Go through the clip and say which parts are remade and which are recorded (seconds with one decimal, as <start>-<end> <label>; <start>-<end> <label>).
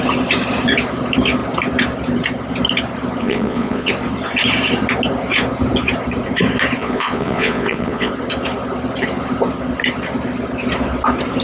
0.0-3.2 recorded; 3.2-3.9 remade; 3.9-6.8 recorded; 6.8-8.1 remade; 8.1-11.4 recorded